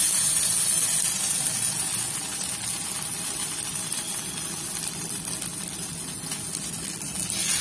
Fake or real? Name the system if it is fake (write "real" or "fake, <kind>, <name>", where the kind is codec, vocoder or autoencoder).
real